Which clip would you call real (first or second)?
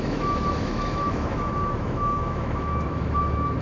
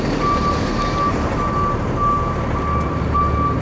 second